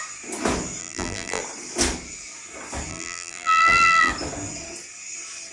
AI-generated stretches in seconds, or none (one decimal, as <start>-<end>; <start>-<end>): 0.8-1.4; 2.9-4.1